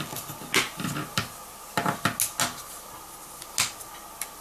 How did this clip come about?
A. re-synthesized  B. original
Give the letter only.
B